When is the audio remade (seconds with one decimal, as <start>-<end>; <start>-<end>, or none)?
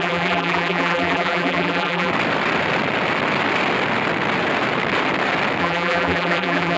0.0-2.1; 5.6-6.8